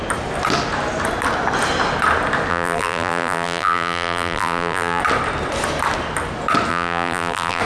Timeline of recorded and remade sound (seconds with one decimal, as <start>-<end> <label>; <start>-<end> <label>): 0.0-2.5 recorded; 2.5-5.0 remade; 5.0-6.7 recorded; 6.7-7.6 remade

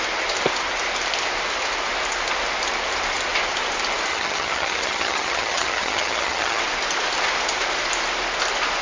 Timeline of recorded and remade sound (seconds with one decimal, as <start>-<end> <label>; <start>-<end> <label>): 0.0-4.1 recorded; 4.1-6.6 remade; 6.6-8.8 recorded

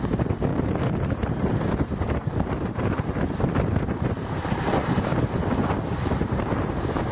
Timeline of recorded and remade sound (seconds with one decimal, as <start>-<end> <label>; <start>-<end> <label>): 0.0-0.5 remade; 0.5-1.1 recorded; 1.1-5.1 remade; 5.1-5.8 recorded; 5.8-7.1 remade

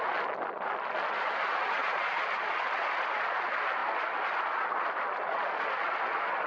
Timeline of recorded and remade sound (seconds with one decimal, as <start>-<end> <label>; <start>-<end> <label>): 0.0-6.5 recorded

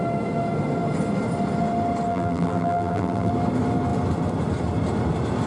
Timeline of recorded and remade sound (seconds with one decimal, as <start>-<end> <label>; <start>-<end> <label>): 0.0-2.1 recorded; 2.1-3.3 remade; 3.3-5.5 recorded

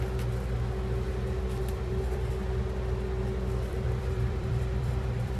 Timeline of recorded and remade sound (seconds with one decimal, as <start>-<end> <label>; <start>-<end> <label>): 0.0-1.6 recorded; 1.6-2.3 remade; 2.3-3.7 recorded; 3.7-5.4 remade